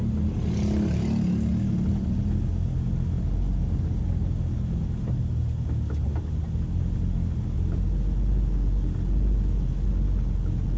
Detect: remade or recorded recorded